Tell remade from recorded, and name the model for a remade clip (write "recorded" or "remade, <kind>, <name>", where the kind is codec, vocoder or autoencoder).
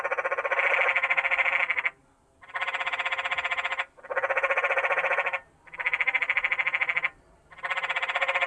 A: recorded